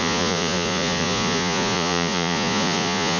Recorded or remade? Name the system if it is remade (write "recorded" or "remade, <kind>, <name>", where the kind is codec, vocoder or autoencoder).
remade, vocoder, Vocos